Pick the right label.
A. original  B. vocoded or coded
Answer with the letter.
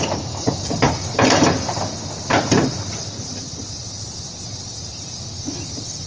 B